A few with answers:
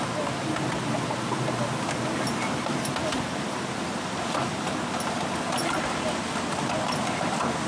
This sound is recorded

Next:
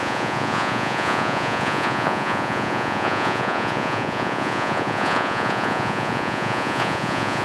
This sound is remade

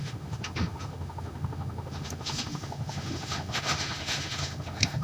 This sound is remade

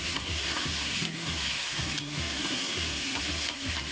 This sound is remade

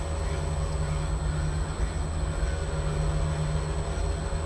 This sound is recorded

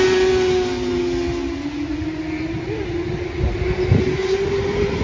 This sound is recorded